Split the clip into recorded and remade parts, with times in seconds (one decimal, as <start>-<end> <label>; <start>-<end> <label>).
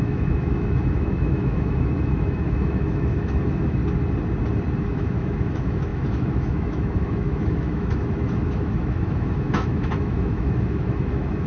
0.0-3.8 remade; 3.8-4.8 recorded; 4.8-11.5 remade